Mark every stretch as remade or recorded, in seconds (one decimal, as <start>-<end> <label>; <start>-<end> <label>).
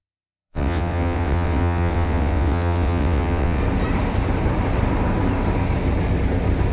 0.0-3.6 remade; 3.6-6.7 recorded